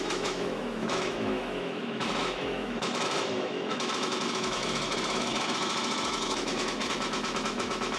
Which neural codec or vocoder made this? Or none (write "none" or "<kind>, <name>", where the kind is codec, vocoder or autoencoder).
autoencoder, DAC-VAE